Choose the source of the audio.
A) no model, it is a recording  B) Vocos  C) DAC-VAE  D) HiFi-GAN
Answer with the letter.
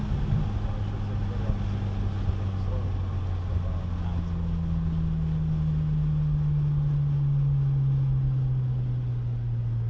A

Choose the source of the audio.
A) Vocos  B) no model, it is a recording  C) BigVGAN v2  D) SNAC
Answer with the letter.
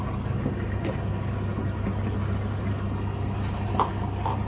B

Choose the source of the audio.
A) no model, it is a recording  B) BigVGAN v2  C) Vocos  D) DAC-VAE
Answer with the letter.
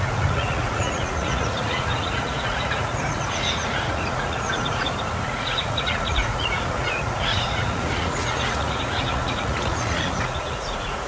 C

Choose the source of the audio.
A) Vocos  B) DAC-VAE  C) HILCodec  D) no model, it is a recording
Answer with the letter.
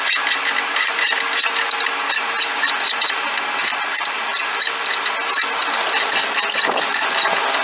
D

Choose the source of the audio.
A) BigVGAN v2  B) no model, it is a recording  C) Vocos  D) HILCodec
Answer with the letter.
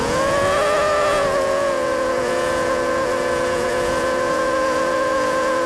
C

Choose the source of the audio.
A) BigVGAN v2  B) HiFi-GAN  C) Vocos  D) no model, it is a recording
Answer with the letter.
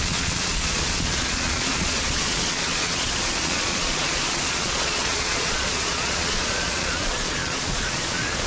C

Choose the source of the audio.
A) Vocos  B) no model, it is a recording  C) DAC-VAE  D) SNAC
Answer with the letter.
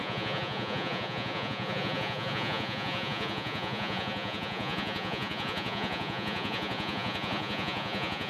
A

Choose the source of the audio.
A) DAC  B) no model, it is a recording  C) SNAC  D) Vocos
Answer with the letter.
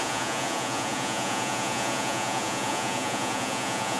D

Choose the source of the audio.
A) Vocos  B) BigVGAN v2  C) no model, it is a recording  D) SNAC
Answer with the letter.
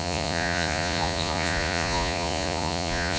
A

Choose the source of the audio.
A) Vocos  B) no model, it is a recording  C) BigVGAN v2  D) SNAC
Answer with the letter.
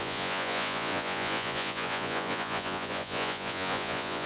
A